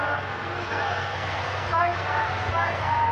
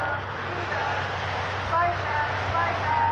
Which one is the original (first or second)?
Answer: second